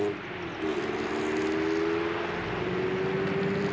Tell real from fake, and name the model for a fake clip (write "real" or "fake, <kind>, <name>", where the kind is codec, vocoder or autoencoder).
real